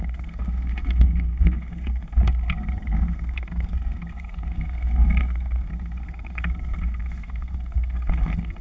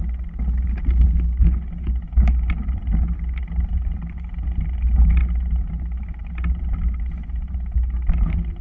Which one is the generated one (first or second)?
first